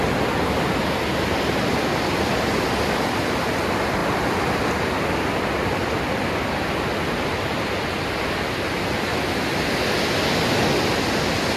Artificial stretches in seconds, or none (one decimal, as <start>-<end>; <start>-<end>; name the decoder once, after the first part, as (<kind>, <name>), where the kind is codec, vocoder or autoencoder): none